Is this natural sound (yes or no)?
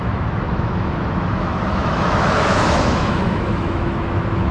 no